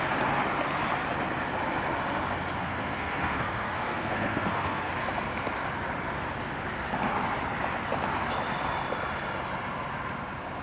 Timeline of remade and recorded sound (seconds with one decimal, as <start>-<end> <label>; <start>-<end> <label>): 0.0-2.6 recorded; 2.6-4.9 remade; 4.9-10.6 recorded